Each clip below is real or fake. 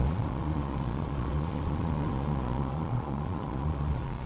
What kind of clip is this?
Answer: fake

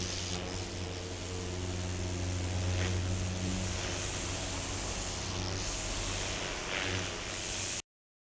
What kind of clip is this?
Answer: real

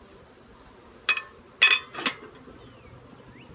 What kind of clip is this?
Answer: real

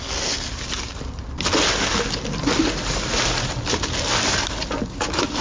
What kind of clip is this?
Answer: real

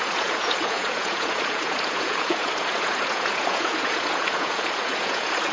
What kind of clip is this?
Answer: fake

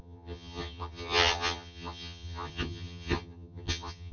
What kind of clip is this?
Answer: fake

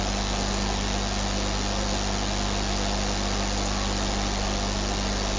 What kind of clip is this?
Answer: real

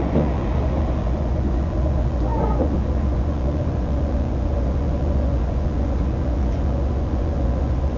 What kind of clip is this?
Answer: fake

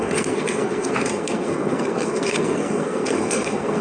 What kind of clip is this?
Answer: fake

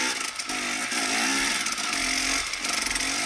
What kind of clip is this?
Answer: real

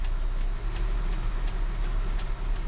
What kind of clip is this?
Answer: real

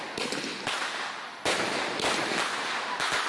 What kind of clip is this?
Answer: real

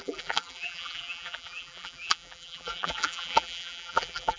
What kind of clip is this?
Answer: fake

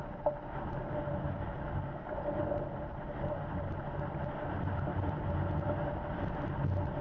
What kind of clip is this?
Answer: real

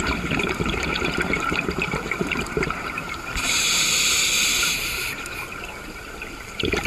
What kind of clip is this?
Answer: fake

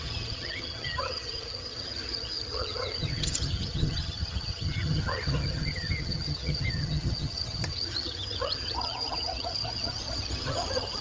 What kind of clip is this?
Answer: fake